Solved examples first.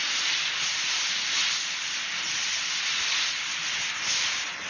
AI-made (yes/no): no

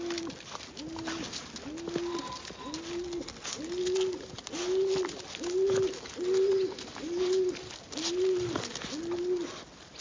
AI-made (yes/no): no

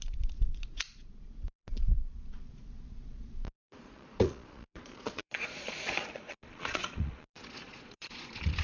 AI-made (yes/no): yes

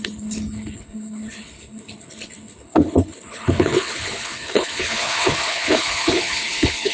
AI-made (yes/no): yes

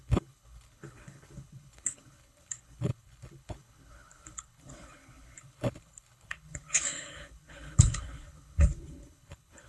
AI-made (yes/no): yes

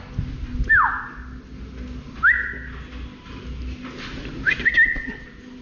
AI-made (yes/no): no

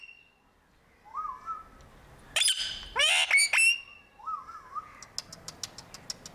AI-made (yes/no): no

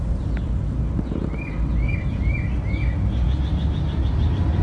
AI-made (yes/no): no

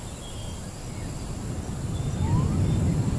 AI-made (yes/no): no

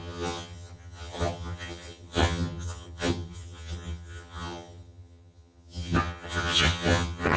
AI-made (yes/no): yes